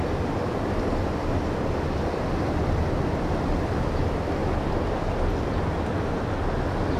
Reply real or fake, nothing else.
real